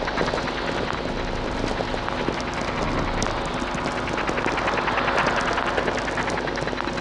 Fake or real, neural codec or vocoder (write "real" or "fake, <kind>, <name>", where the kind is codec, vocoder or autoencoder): real